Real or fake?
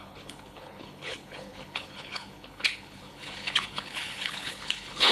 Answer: fake